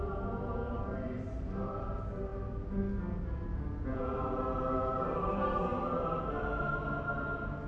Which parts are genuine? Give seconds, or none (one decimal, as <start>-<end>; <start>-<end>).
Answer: 0.0-7.7

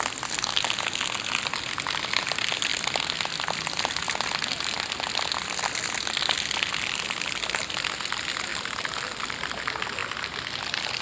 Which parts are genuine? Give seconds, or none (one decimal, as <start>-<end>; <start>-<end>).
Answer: 0.0-2.7; 5.0-8.5; 9.6-11.0

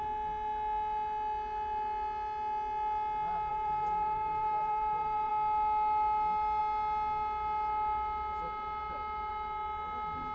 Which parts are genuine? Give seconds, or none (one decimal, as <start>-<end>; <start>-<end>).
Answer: 0.0-3.5; 5.3-10.3